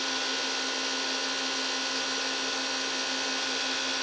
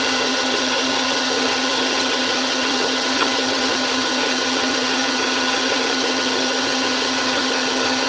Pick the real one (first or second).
first